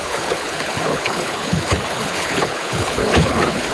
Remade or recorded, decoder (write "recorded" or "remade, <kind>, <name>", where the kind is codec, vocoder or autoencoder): remade, codec, HILCodec